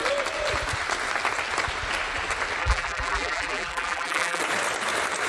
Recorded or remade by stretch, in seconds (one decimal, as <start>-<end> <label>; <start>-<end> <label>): 0.0-2.6 recorded; 2.6-4.4 remade; 4.4-5.3 recorded